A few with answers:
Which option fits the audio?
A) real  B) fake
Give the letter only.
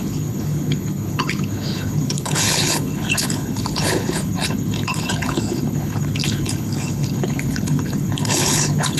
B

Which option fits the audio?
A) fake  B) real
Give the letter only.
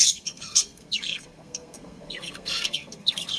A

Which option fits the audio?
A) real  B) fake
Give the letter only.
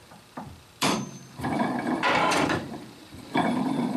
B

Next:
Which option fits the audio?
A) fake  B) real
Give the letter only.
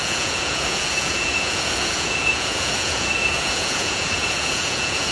A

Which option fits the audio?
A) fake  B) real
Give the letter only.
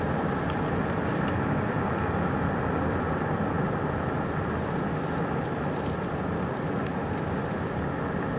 B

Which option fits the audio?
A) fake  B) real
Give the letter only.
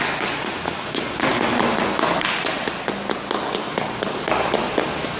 B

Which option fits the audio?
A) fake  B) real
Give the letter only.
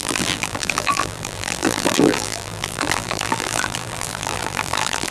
A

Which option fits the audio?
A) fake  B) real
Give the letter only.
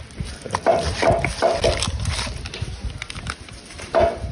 B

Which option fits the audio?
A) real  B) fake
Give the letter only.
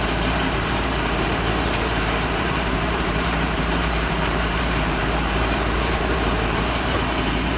B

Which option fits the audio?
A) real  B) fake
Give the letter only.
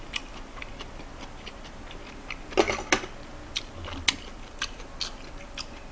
A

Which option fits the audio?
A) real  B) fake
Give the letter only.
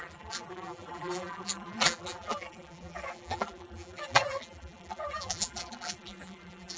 B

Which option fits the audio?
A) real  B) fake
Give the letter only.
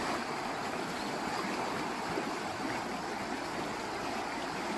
A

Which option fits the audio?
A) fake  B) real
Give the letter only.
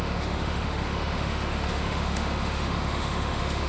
A